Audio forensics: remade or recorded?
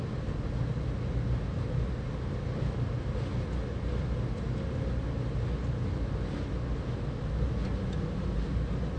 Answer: recorded